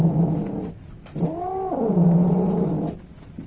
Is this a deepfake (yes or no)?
no